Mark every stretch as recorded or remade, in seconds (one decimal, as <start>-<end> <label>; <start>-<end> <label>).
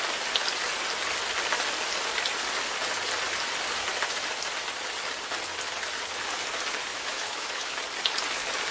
0.0-6.9 recorded; 6.9-7.8 remade; 7.8-8.7 recorded